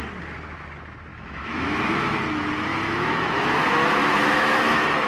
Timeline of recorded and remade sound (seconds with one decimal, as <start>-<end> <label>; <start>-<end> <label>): 0.0-1.1 recorded; 1.1-2.2 remade; 2.2-2.7 recorded; 2.7-5.1 remade